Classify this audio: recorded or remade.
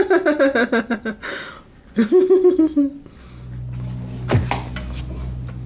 recorded